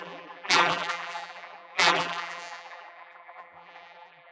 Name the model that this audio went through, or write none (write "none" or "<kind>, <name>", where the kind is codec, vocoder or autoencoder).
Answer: vocoder, BigVGAN v2